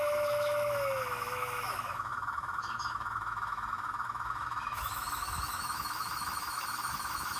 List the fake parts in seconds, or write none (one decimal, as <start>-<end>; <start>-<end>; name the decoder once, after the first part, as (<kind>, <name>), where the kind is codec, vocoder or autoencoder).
0.0-7.4 (autoencoder, DAC-VAE)